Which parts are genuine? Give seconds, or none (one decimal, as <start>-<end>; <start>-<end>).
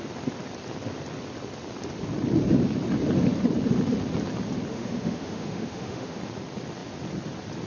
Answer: 0.0-4.7; 6.2-7.7